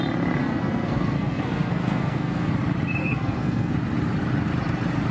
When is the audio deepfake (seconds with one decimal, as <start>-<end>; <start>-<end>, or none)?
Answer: 0.4-2.5; 3.0-3.7